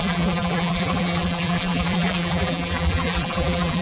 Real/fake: fake